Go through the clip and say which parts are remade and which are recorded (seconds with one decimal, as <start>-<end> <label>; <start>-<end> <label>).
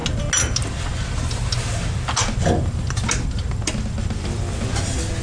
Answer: 0.0-5.2 recorded